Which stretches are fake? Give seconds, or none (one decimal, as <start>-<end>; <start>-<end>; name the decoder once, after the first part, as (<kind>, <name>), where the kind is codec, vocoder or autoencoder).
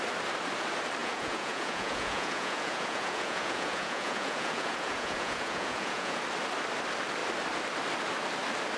1.0-6.2 (vocoder, Vocos)